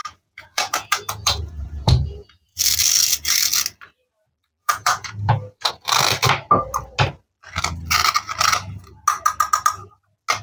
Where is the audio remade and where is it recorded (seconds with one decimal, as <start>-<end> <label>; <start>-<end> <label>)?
0.0-2.6 remade; 2.6-4.6 recorded; 4.6-5.7 remade; 5.7-10.4 recorded